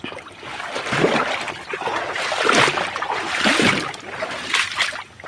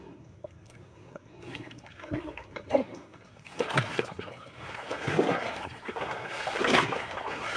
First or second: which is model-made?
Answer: second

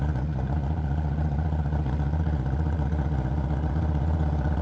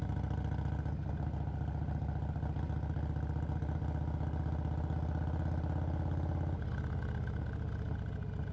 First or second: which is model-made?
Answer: first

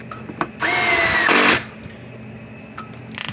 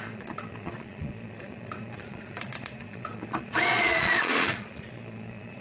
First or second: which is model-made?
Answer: second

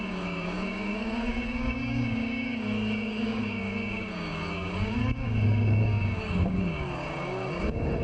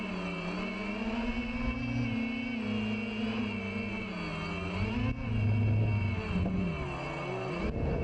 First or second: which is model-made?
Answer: first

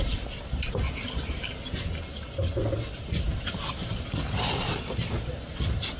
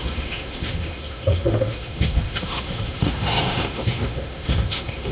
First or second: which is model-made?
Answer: second